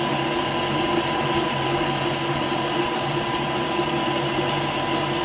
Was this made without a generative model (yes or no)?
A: yes